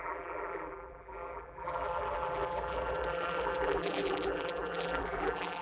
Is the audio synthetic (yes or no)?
yes